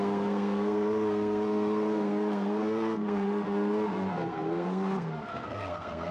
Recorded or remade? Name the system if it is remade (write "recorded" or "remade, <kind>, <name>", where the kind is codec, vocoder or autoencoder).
remade, codec, SNAC